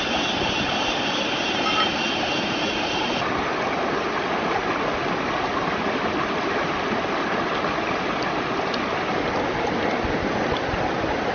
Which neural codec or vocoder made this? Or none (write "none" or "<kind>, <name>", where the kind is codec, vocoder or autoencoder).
none